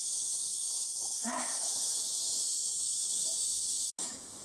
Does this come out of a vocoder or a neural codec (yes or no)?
yes